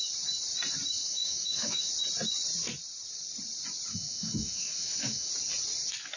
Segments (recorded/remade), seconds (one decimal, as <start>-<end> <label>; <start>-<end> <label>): 0.0-1.0 recorded; 1.0-1.9 remade; 1.9-3.9 recorded; 3.9-5.3 remade; 5.3-6.2 recorded